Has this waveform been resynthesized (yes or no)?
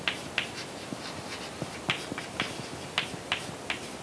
no